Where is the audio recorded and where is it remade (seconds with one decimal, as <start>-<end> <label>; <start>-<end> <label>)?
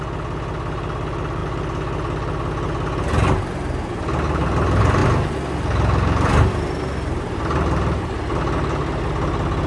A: 0.0-9.7 recorded